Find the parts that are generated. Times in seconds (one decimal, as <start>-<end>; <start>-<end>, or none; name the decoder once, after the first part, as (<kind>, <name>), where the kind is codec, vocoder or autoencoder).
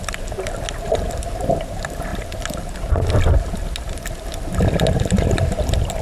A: none